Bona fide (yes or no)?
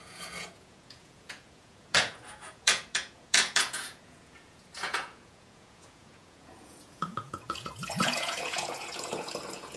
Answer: no